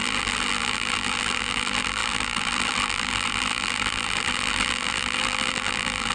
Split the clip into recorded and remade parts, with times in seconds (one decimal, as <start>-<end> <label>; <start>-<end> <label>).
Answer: 0.0-6.1 remade